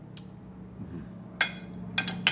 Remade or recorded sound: recorded